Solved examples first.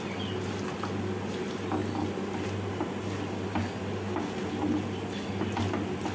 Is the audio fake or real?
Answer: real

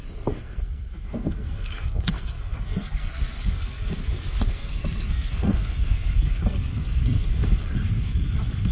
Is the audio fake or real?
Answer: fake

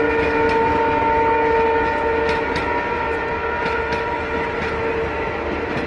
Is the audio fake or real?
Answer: real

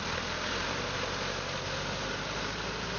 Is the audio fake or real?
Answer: real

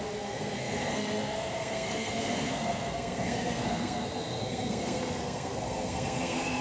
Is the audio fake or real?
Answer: fake